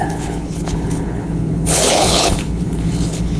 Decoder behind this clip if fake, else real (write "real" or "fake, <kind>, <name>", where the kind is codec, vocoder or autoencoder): fake, codec, HILCodec